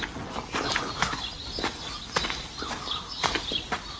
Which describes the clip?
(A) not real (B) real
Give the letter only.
B